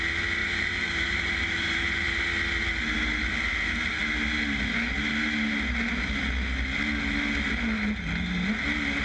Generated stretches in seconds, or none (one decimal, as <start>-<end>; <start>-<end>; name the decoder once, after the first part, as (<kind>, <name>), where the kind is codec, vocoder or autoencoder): 0.4-2.2 (vocoder, BigVGAN v2)